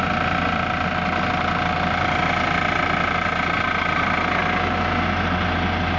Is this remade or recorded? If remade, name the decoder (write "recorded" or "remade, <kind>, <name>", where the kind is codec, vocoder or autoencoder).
recorded